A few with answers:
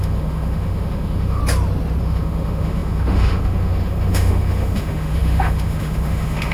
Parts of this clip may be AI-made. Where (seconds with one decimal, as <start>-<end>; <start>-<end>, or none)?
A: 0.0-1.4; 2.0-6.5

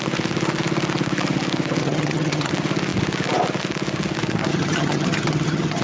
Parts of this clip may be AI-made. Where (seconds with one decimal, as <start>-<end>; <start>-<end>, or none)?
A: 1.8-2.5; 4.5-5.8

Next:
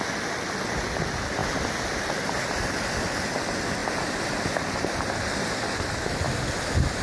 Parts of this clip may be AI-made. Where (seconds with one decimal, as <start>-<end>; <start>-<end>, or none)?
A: none

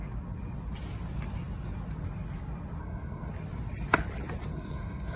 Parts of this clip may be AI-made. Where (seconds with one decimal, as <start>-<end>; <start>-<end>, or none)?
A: 2.8-3.3; 4.5-5.2

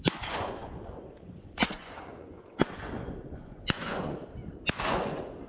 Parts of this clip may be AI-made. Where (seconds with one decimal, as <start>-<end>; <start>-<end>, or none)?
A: 0.0-4.2; 4.7-5.5

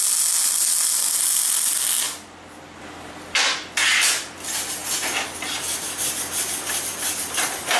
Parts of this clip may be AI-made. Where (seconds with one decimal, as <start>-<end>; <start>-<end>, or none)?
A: none

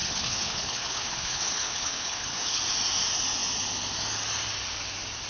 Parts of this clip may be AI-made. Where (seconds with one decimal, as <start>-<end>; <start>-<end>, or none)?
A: 0.0-2.6

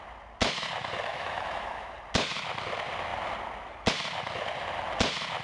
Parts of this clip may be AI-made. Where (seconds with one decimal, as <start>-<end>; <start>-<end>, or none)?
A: 1.1-1.9